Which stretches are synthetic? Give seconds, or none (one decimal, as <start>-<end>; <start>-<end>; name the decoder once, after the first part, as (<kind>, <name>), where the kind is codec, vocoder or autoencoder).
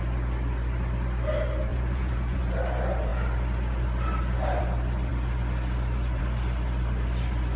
1.7-2.4 (vocoder, Vocos)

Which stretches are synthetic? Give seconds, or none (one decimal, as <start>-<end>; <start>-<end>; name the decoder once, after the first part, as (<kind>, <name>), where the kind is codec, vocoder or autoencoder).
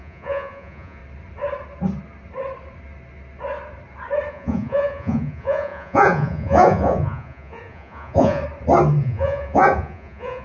0.0-1.0 (vocoder, Vocos); 4.3-8.4; 9.0-10.4